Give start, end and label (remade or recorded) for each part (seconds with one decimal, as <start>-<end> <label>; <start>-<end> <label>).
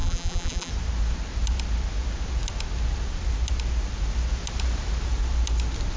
0.0-0.7 remade; 0.7-6.0 recorded